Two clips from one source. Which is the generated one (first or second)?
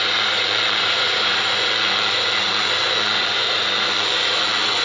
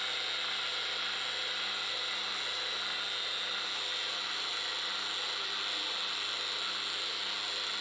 first